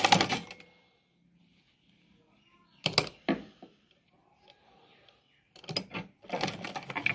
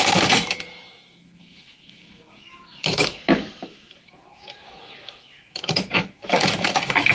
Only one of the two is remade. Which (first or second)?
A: second